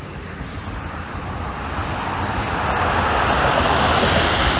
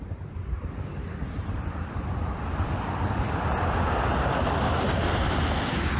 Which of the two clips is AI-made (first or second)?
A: second